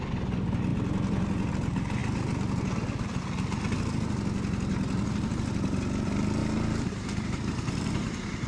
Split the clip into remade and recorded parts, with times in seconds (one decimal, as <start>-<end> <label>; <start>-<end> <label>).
0.0-6.4 recorded; 6.4-8.5 remade